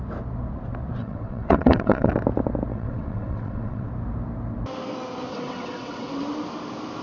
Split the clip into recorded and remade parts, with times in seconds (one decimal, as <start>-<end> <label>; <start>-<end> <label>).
0.0-1.0 recorded; 1.0-2.1 remade; 2.1-2.7 recorded; 2.7-3.9 remade; 3.9-5.3 recorded; 5.3-6.1 remade; 6.1-7.0 recorded